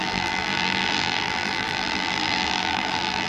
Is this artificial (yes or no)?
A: yes